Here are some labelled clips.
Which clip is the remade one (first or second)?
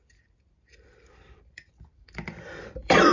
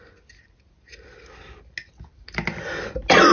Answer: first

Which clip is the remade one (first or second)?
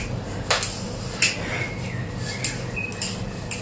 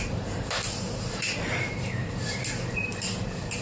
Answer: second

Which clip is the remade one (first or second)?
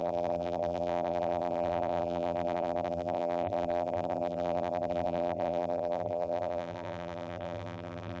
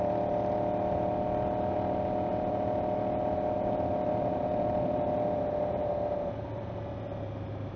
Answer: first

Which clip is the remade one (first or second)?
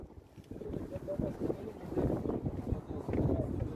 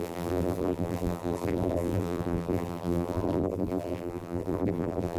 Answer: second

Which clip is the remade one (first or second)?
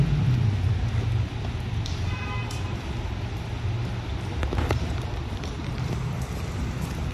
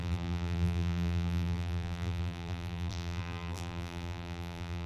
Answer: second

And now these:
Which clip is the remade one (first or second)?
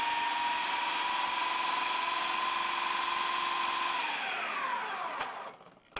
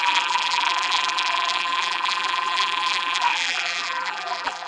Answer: second